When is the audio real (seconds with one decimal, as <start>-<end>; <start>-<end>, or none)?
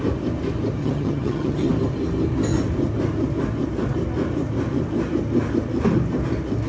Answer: 0.0-0.8; 1.7-6.7